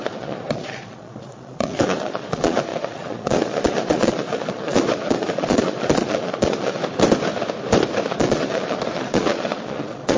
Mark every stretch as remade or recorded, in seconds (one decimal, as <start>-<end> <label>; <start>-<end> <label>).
0.0-6.8 remade; 6.8-8.1 recorded; 8.1-10.2 remade